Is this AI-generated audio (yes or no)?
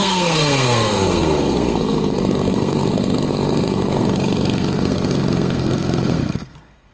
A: yes